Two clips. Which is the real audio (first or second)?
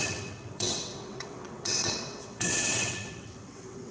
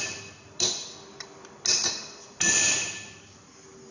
second